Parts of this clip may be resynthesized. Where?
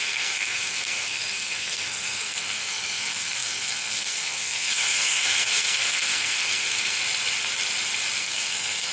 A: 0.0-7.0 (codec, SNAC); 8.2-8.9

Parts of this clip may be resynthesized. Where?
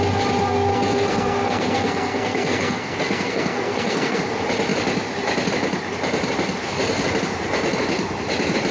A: 0.7-4.2 (codec, SNAC)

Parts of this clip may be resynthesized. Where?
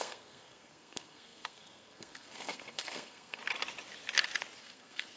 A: 0.0-3.4 (codec, SNAC); 4.6-5.2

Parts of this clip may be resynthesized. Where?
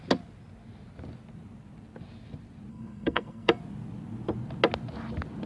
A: 2.7-3.6 (codec, SNAC)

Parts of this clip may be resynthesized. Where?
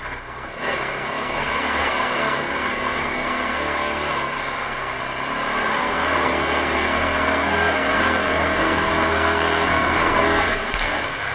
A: 0.0-5.0 (codec, SNAC); 5.7-11.3